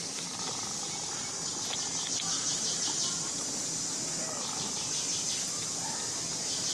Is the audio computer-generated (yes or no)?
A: no